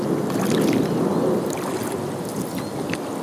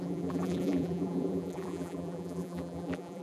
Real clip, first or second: first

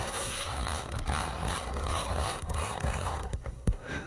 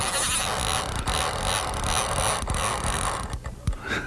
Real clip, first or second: second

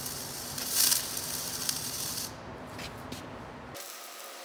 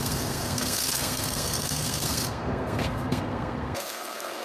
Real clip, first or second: first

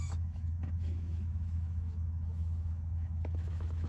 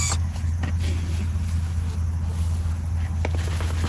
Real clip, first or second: second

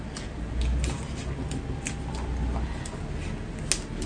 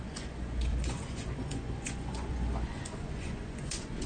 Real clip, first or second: first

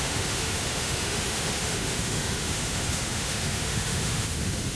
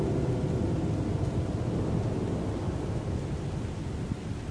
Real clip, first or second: second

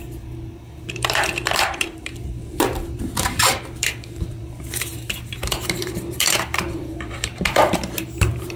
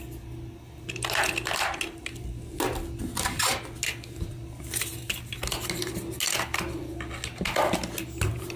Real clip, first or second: second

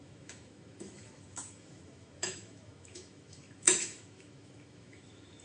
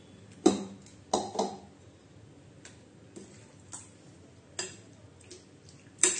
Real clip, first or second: second